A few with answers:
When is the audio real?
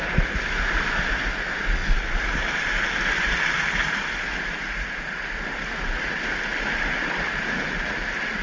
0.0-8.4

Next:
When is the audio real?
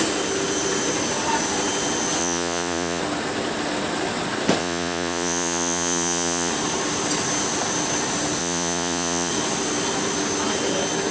0.0-2.2; 3.0-4.6; 6.5-8.4; 9.3-11.1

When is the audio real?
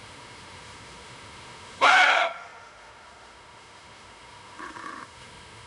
none